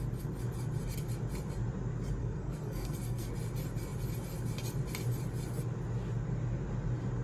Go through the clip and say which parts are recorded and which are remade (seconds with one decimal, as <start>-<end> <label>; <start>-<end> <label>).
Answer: 0.0-2.2 recorded; 2.2-3.3 remade; 3.3-7.2 recorded